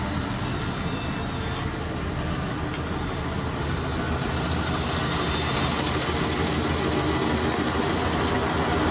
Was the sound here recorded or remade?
recorded